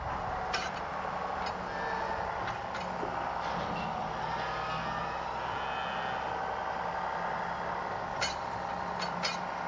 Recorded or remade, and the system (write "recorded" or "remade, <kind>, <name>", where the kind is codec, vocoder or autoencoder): recorded